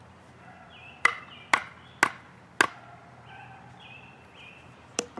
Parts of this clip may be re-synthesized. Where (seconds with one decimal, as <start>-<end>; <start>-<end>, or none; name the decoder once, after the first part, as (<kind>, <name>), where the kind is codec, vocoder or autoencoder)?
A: 0.0-1.6 (vocoder, BigVGAN v2); 3.1-5.2